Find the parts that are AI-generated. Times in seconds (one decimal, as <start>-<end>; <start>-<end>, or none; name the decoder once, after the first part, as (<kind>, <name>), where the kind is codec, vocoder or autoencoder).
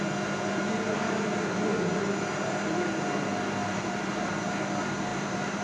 3.6-4.3 (vocoder, BigVGAN v2); 5.1-5.6